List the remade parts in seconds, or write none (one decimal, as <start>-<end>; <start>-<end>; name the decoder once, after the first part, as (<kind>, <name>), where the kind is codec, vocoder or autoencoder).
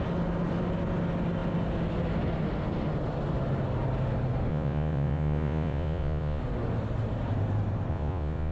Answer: 4.5-6.4 (vocoder, Vocos); 7.9-8.5